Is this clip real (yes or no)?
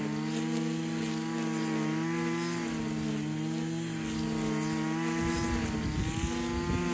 yes